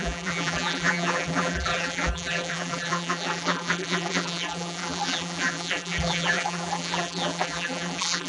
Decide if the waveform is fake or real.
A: fake